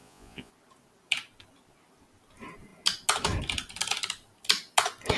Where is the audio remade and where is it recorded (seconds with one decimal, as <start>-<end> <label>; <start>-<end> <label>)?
0.0-0.5 remade; 0.5-5.2 recorded